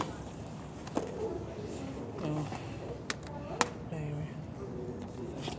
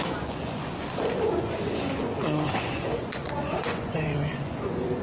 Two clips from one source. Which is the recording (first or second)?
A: first